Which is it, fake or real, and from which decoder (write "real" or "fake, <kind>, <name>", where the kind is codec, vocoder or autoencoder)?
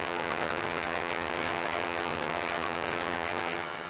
fake, vocoder, HiFi-GAN